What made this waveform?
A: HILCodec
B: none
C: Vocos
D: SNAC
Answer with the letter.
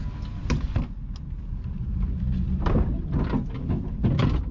B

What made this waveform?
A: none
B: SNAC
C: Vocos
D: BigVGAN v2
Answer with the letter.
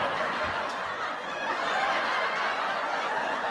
C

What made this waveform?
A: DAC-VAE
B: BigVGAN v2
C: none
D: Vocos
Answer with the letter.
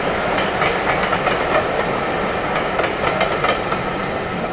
C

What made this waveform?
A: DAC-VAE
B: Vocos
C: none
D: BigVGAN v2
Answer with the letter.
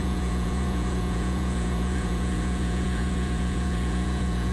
B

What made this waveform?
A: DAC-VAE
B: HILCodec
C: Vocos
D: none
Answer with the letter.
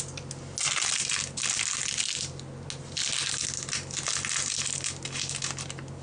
D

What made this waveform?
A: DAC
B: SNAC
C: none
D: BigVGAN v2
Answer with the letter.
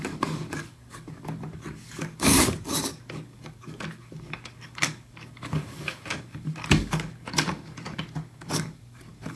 A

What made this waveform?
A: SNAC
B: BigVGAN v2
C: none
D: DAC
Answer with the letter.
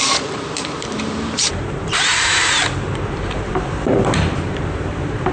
B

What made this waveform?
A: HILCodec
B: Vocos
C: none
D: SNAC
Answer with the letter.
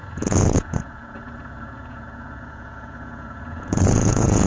B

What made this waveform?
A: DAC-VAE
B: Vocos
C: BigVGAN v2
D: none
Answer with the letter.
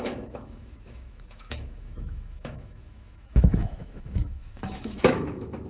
A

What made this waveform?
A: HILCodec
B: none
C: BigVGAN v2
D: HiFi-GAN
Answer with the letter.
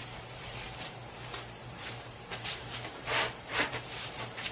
C